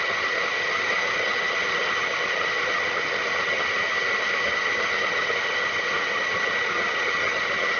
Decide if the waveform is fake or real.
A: fake